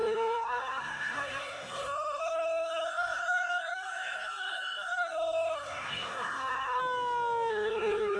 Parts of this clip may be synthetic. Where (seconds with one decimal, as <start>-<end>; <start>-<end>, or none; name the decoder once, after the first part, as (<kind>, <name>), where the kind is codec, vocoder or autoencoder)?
0.0-6.8 (codec, SNAC); 7.5-8.2